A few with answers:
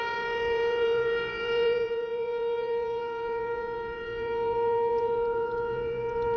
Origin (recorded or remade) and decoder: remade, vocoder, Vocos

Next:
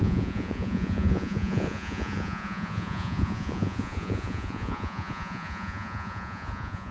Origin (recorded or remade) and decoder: remade, vocoder, Vocos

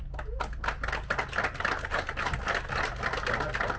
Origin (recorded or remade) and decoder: recorded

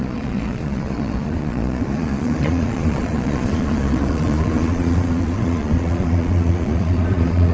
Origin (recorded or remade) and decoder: remade, vocoder, Vocos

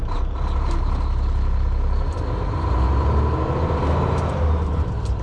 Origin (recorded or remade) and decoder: recorded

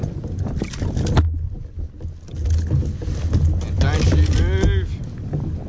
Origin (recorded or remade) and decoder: recorded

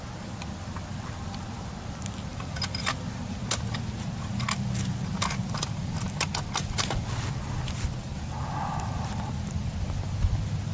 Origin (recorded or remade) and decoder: recorded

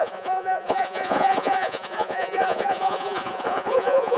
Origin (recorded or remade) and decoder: remade, vocoder, Vocos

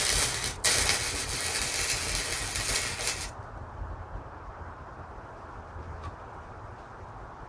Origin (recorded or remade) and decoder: recorded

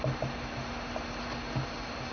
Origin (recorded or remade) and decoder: recorded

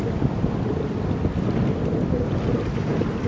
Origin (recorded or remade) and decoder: recorded